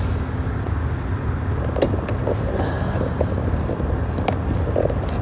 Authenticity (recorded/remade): recorded